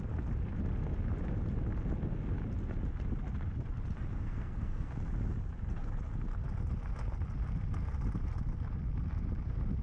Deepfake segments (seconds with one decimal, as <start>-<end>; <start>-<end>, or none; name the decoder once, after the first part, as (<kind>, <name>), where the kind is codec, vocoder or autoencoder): 4.1-4.9 (codec, SNAC)